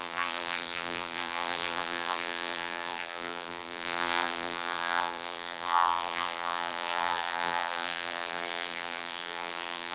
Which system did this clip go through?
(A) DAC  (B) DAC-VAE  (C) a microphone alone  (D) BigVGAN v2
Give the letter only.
D